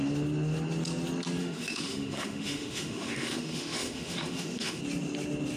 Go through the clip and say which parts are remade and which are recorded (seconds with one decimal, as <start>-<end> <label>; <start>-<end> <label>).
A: 0.0-1.4 recorded; 1.4-4.8 remade; 4.8-5.6 recorded